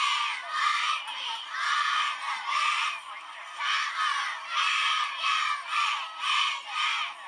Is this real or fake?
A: fake